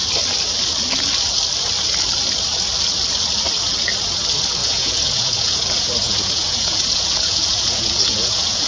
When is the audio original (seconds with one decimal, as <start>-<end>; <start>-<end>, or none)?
0.0-4.6